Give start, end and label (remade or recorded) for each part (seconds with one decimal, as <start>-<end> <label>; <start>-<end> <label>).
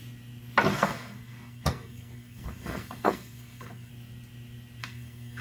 0.0-0.7 recorded; 0.7-3.9 remade; 3.9-4.8 recorded; 4.8-5.4 remade